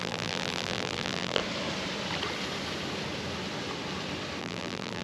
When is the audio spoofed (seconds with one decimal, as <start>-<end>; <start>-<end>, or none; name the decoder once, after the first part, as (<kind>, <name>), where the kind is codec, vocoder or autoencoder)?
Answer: 0.0-1.4 (vocoder, BigVGAN v2); 4.4-5.0